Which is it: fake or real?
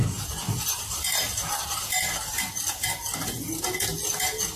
real